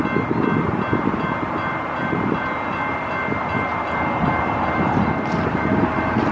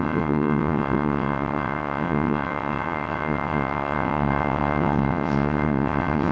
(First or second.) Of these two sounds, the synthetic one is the second